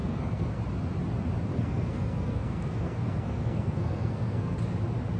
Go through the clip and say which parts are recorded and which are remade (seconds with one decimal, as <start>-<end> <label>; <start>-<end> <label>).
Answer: 0.0-0.6 remade; 0.6-1.5 recorded; 1.5-4.6 remade; 4.6-5.2 recorded

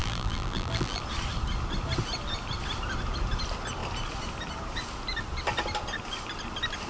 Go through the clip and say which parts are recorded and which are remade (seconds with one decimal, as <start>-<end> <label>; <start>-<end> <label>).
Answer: 0.0-1.0 remade; 1.0-6.9 recorded

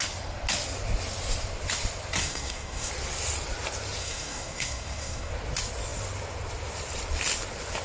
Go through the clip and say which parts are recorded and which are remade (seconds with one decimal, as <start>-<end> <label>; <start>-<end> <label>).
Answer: 0.0-2.2 recorded; 2.2-2.9 remade; 2.9-4.0 recorded; 4.0-5.3 remade; 5.3-7.8 recorded

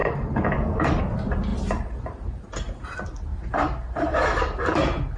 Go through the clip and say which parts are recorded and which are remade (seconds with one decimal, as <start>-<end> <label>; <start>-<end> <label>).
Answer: 0.0-1.0 remade; 1.0-5.2 recorded

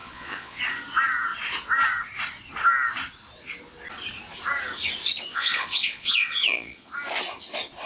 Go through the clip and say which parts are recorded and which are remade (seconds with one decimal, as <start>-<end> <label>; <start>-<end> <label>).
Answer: 0.0-0.6 remade; 0.6-5.3 recorded; 5.3-6.9 remade; 6.9-7.9 recorded

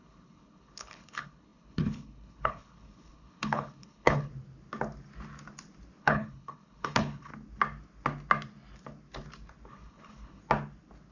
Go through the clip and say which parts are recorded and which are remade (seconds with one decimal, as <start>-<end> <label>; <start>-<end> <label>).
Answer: 0.0-4.3 remade; 4.3-6.0 recorded; 6.0-7.3 remade; 7.3-9.7 recorded; 9.7-10.4 remade; 10.4-11.1 recorded